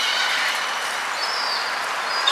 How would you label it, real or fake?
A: real